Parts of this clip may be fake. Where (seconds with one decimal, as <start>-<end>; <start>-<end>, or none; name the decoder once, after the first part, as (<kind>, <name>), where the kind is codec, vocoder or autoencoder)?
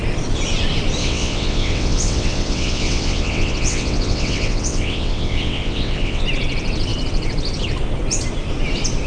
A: 1.0-6.2 (vocoder, WaveNeXt)